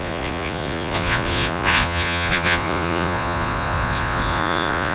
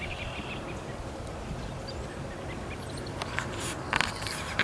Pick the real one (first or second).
second